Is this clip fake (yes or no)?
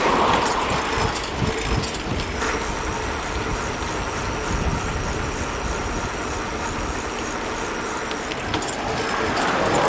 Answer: no